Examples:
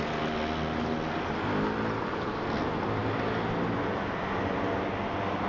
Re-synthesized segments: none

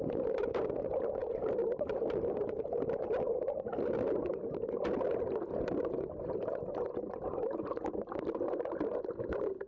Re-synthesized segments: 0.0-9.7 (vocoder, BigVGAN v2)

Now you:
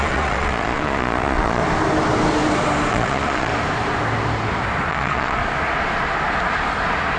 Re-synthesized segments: 0.0-1.6 (vocoder, Vocos); 2.9-3.5; 4.9-5.4